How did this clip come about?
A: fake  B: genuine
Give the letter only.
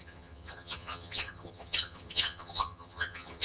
A